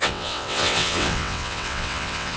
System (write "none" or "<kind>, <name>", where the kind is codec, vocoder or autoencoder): vocoder, WaveNeXt